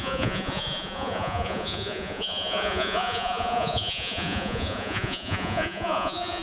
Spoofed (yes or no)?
yes